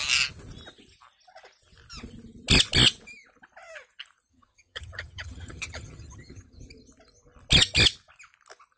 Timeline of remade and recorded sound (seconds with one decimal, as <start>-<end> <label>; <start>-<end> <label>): 0.0-4.3 recorded; 4.3-6.6 remade; 6.6-8.8 recorded